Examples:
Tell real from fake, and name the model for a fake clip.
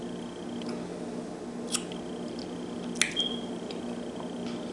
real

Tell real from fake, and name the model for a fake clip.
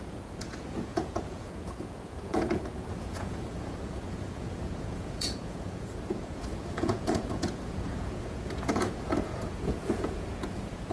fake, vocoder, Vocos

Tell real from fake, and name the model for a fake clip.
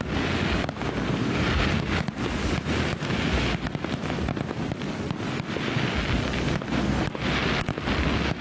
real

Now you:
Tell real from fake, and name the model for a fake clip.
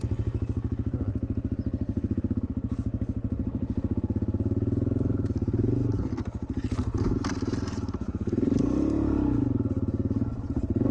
real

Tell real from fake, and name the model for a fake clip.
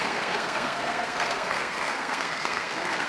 fake, codec, SNAC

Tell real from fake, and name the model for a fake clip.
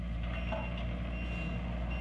real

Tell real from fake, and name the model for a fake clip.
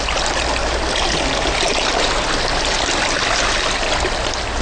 real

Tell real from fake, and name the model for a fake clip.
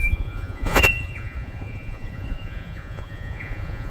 fake, vocoder, Vocos